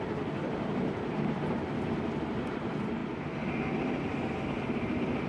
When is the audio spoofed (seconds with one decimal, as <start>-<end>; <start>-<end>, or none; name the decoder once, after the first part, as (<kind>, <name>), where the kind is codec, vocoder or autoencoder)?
none